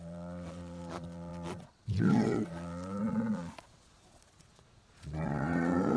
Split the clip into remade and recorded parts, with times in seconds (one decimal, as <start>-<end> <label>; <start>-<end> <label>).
0.0-6.0 remade